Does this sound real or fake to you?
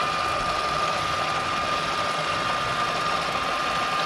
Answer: real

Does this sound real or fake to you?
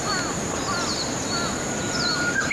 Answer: real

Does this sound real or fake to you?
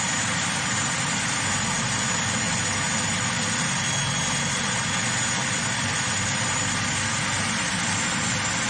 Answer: real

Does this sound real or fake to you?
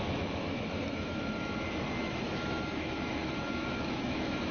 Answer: fake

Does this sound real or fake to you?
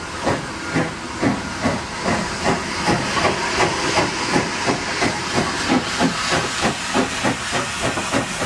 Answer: real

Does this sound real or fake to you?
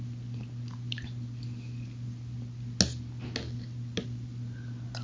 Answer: real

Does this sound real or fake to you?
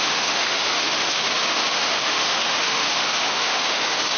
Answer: fake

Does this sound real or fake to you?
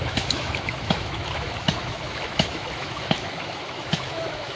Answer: fake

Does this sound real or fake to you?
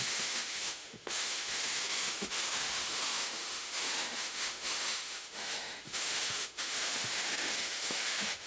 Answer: fake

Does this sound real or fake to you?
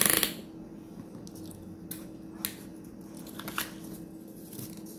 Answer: real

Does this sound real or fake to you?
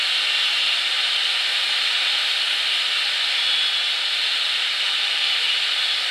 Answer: real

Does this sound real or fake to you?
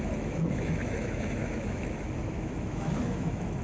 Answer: fake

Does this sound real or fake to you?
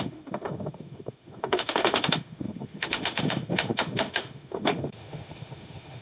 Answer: fake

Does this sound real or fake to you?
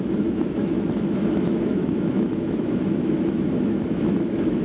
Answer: fake